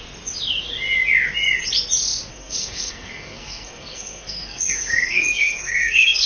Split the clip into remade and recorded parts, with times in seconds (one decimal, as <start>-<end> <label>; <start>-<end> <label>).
0.0-2.3 recorded; 2.3-6.3 remade